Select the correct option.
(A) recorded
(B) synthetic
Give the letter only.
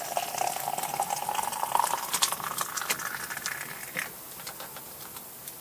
A